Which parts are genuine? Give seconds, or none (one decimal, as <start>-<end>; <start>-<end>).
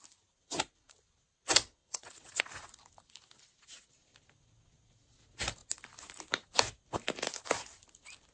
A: 0.0-1.8; 2.4-8.3